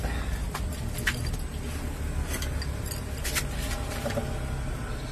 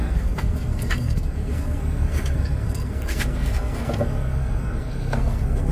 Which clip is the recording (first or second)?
first